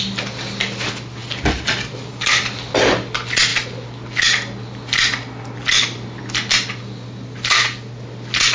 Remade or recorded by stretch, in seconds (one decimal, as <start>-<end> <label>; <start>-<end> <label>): 0.0-8.5 recorded